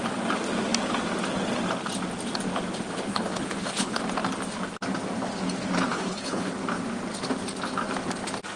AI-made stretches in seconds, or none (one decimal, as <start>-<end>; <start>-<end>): 3.1-4.0; 5.9-6.5